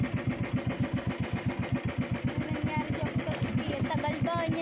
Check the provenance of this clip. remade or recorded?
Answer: recorded